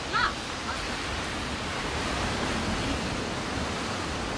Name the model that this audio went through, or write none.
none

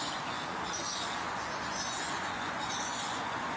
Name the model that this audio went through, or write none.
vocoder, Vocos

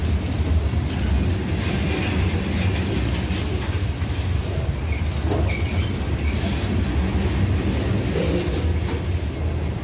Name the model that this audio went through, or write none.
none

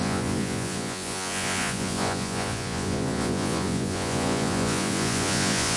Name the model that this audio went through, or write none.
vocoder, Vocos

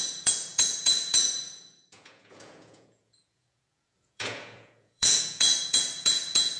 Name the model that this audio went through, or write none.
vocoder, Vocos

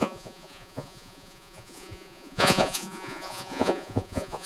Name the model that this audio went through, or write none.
vocoder, Vocos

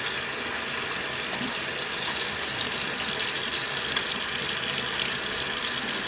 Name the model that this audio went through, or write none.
none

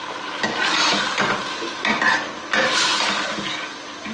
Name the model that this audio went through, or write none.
none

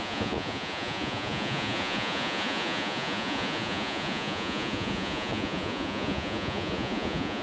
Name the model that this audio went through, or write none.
vocoder, Vocos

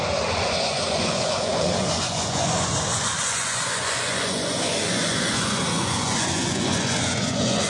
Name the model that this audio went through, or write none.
vocoder, Vocos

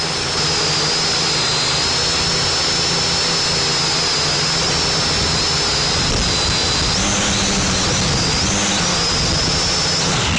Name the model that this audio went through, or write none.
none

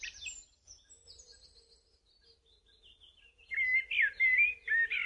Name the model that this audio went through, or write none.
none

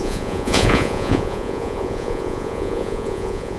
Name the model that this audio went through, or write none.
vocoder, Vocos